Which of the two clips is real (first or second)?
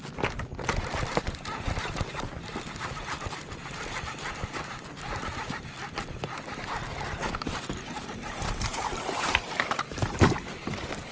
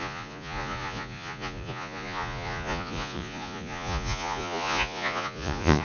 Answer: first